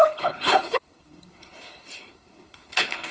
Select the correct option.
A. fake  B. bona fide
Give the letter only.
A